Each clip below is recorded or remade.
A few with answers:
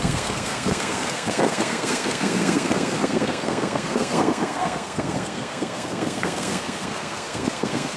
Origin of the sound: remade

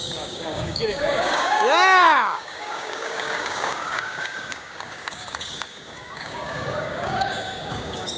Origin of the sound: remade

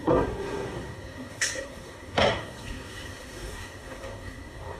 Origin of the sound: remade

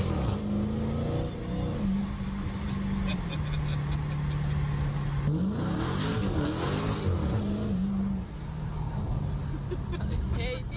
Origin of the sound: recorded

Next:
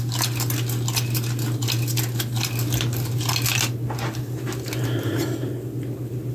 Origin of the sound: recorded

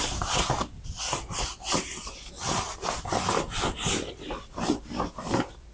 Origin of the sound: recorded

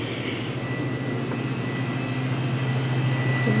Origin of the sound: recorded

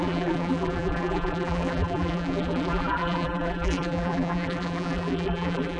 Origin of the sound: remade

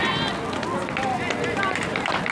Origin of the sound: recorded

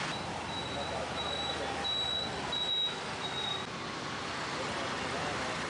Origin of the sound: recorded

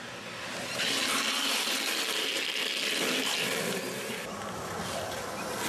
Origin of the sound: recorded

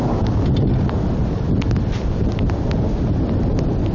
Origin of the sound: recorded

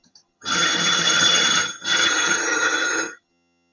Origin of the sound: remade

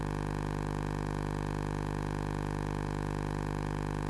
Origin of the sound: remade